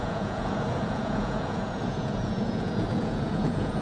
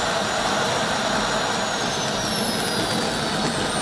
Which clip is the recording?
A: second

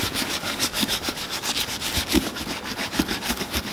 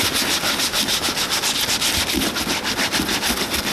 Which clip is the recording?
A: second